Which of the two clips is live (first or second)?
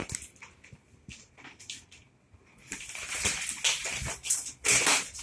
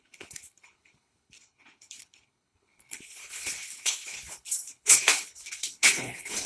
first